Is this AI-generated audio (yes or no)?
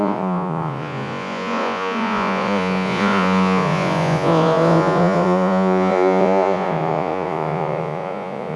yes